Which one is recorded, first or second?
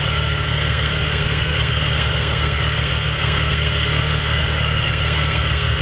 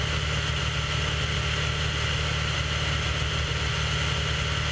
second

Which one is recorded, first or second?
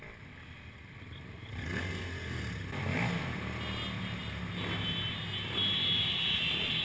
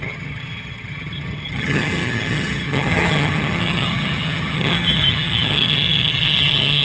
first